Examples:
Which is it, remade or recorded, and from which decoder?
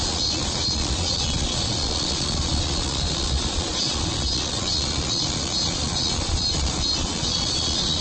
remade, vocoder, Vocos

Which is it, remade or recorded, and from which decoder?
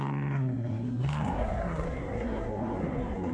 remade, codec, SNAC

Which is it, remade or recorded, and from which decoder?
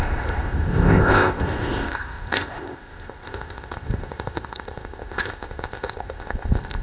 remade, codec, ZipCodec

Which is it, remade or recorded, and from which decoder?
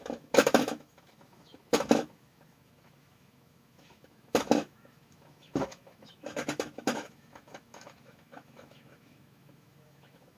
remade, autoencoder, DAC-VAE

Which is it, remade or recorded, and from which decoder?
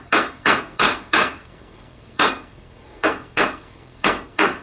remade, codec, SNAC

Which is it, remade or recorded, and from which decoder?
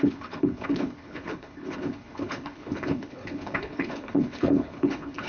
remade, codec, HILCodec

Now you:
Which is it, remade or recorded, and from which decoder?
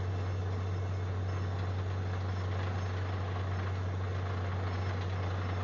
recorded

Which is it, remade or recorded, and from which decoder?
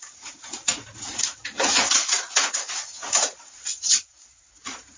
remade, vocoder, Vocos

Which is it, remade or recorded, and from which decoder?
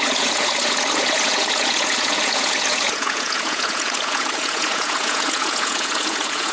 remade, vocoder, Vocos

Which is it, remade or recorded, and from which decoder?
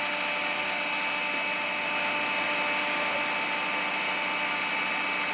recorded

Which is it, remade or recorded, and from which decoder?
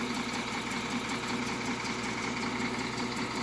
recorded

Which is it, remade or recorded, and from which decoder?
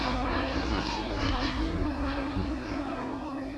remade, codec, SNAC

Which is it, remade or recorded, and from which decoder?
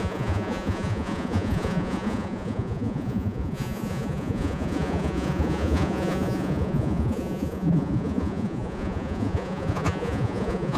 remade, vocoder, Vocos